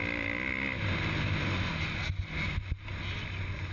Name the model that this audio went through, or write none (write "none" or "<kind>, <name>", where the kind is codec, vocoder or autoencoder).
none